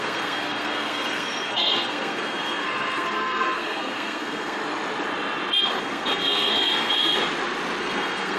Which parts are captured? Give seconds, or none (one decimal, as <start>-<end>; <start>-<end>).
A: 4.6-5.8; 7.2-7.8

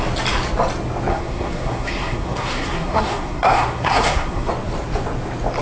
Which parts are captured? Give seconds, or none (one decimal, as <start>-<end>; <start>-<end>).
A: 0.0-1.1; 4.5-5.6

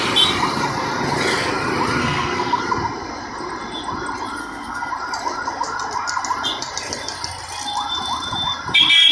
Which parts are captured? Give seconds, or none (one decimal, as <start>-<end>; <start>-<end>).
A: 0.0-2.0; 2.6-4.4; 4.9-9.1